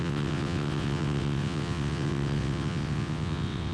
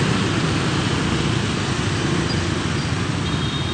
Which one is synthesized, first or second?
first